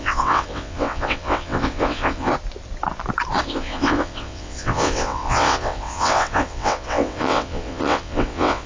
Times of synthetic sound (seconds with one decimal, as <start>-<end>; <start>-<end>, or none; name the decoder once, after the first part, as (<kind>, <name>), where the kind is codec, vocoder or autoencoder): 0.0-2.3 (vocoder, WaveNeXt); 3.4-8.7